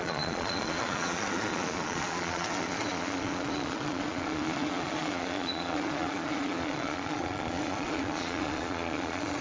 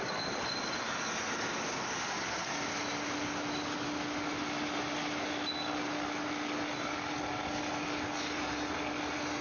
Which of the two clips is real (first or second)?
second